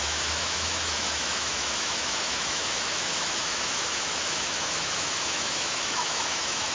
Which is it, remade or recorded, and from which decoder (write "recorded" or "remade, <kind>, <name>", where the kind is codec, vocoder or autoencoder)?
remade, autoencoder, DAC-VAE